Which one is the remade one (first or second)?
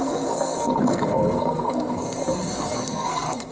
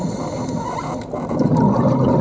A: first